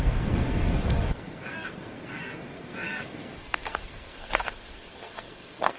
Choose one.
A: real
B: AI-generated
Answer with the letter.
B